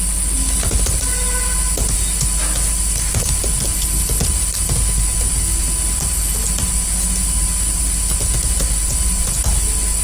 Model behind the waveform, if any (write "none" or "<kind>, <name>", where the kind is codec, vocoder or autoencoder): none